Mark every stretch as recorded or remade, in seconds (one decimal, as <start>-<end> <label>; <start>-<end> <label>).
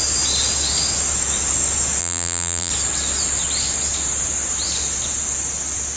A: 0.0-2.0 recorded; 2.0-2.7 remade; 2.7-6.0 recorded